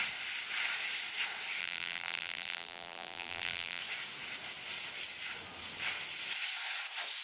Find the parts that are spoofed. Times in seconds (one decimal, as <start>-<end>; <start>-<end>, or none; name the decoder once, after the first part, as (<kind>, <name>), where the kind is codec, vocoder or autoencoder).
1.6-3.8 (vocoder, BigVGAN v2)